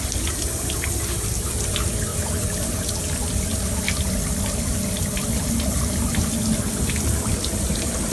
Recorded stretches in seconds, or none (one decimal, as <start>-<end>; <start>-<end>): 0.0-8.1